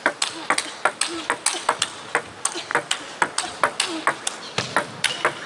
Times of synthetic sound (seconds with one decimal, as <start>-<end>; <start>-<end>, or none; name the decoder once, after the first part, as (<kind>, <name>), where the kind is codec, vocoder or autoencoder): none